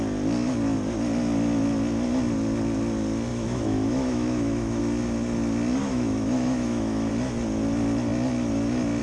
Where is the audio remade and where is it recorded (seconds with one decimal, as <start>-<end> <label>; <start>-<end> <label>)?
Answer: 0.0-3.3 recorded; 3.3-4.8 remade; 4.8-5.8 recorded; 5.8-7.1 remade; 7.1-9.0 recorded